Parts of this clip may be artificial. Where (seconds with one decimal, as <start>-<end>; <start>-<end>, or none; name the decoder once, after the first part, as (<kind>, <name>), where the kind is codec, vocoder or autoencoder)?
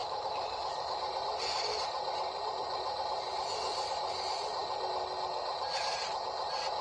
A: 0.0-1.0 (autoencoder, DAC-VAE)